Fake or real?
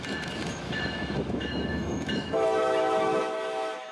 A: fake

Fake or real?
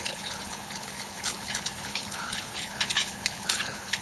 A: fake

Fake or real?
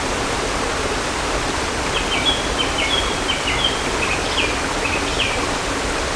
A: real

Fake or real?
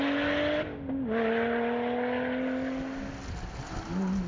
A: real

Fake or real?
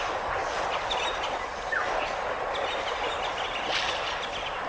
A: real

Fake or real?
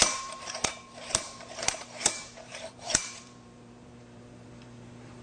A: fake